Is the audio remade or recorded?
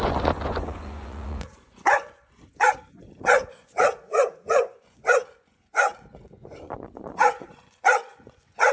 remade